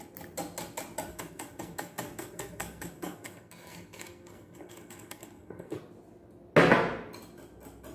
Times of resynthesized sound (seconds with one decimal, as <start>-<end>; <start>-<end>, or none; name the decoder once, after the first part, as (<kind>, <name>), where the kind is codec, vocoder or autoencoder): 1.1-5.8 (codec, SNAC)